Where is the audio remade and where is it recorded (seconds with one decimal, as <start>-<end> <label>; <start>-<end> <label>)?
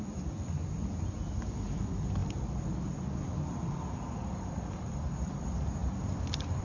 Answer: 0.0-6.6 recorded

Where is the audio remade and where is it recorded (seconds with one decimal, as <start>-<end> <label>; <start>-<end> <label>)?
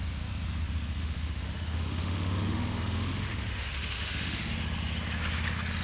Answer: 0.0-1.0 recorded; 1.0-4.5 remade; 4.5-5.8 recorded